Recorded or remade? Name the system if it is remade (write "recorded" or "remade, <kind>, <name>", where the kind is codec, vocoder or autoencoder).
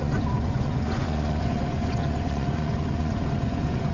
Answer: remade, vocoder, Vocos